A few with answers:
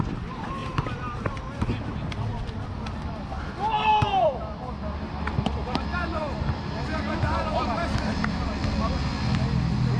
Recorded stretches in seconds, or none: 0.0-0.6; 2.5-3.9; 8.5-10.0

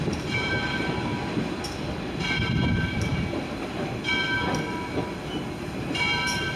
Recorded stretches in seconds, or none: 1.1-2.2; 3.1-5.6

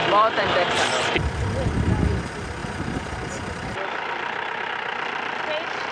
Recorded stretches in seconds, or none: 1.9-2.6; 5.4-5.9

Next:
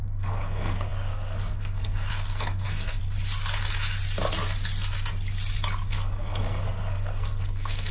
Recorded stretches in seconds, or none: 3.0-5.9